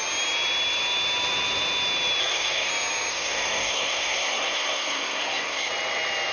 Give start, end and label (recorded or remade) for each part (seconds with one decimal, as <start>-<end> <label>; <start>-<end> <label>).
0.0-2.2 recorded; 2.2-2.7 remade; 2.7-3.1 recorded; 3.1-5.7 remade; 5.7-6.3 recorded